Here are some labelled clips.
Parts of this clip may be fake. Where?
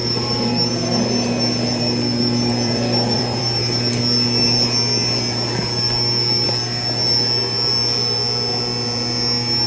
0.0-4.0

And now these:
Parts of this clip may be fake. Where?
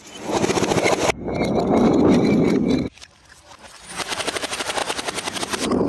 0.0-0.4; 2.2-4.8; 5.4-5.9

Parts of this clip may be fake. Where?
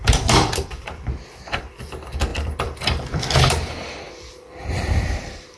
0.0-5.6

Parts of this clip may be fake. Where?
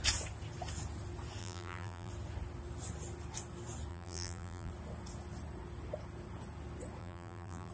1.4-2.1; 3.9-4.7; 7.0-7.7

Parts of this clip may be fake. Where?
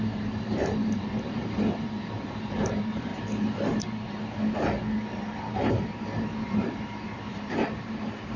0.0-3.1; 5.7-8.4